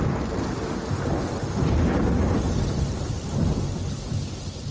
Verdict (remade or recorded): recorded